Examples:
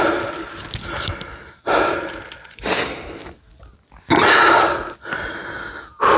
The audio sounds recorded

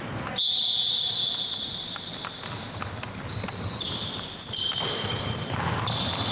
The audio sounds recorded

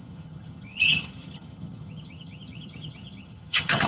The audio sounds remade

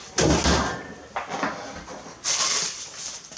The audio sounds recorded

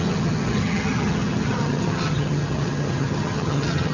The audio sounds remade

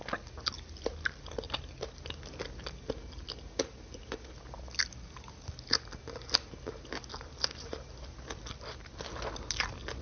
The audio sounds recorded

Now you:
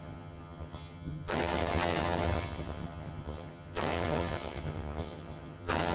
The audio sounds remade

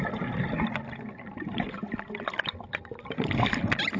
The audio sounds recorded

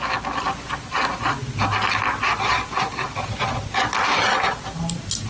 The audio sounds recorded